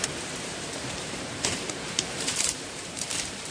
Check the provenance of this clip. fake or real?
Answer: fake